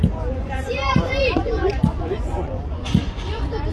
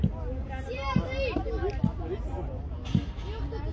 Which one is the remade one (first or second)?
first